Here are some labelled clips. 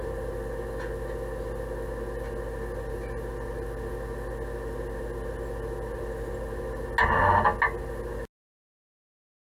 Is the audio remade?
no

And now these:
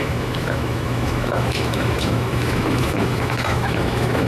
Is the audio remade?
yes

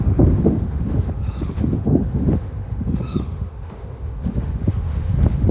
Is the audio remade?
yes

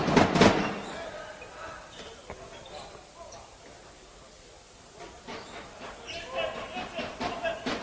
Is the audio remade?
no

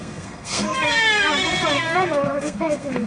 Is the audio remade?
yes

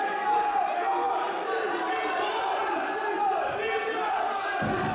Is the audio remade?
no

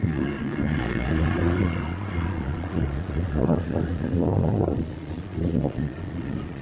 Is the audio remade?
yes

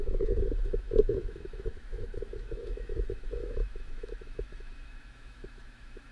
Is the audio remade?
yes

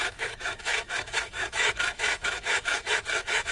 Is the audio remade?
yes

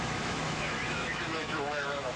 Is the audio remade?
yes